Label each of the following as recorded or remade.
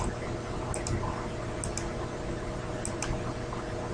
recorded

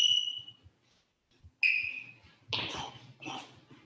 recorded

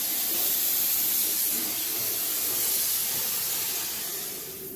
recorded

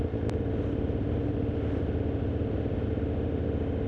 recorded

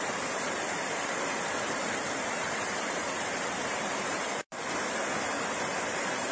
remade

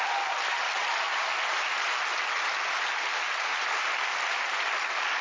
recorded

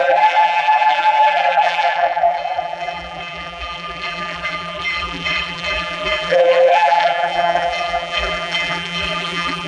remade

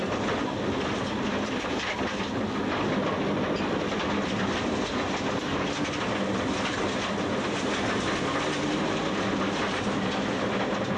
recorded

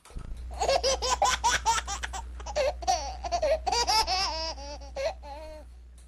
recorded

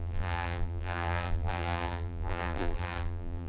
remade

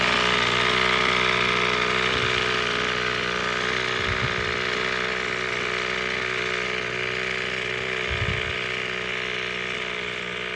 recorded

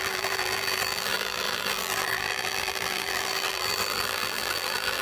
remade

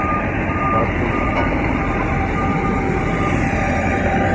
remade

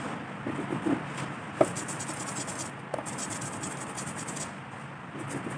recorded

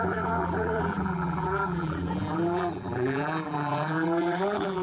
remade